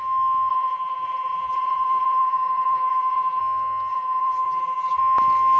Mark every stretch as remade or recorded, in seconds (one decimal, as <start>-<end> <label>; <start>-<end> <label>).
0.0-0.5 recorded; 0.5-3.4 remade; 3.4-3.9 recorded; 3.9-5.0 remade; 5.0-5.6 recorded